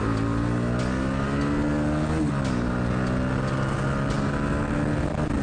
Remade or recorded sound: recorded